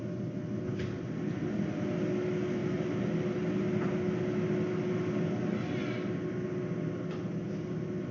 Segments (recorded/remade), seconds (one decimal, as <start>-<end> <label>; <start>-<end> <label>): 0.0-8.1 recorded